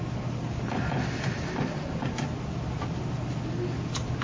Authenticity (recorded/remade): recorded